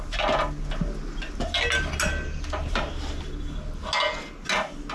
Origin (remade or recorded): recorded